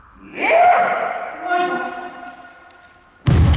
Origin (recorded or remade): recorded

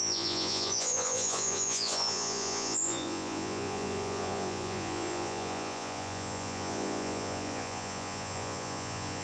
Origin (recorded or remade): remade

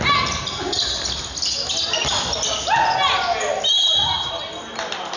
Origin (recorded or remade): recorded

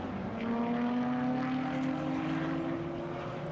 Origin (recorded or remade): recorded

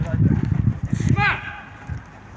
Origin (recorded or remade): recorded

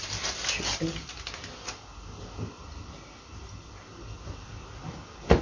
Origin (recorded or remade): recorded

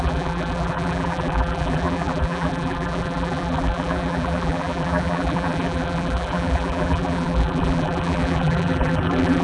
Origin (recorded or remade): remade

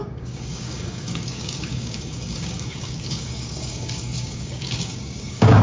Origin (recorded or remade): remade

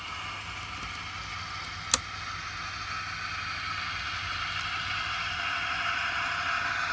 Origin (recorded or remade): recorded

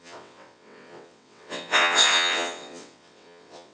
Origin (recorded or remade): remade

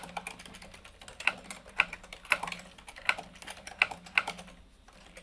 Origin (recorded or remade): recorded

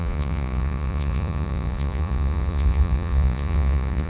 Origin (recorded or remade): remade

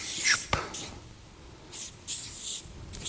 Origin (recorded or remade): recorded